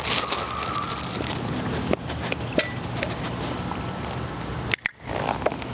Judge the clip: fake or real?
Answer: real